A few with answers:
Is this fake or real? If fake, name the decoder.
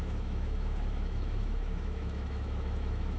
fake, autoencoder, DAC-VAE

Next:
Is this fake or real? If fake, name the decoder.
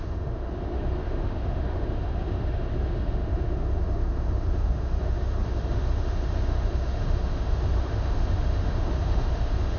fake, autoencoder, DAC-VAE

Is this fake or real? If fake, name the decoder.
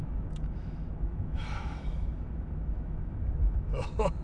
fake, autoencoder, DAC-VAE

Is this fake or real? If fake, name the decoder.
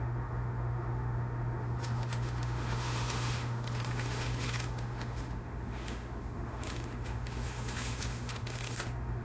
fake, autoencoder, DAC-VAE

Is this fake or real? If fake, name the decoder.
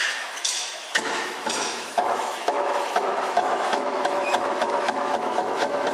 fake, autoencoder, DAC-VAE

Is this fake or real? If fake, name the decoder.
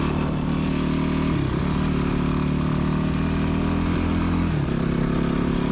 real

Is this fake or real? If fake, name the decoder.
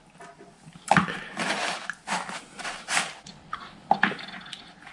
real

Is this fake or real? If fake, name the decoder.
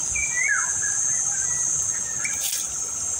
real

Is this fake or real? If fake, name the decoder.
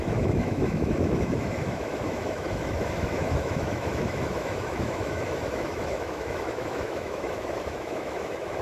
fake, autoencoder, DAC-VAE